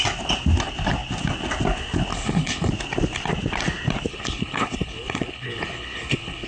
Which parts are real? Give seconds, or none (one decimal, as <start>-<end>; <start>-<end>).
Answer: 0.0-2.1; 2.7-4.1